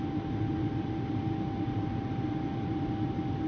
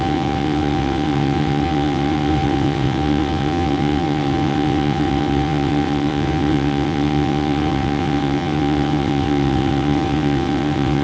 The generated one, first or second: second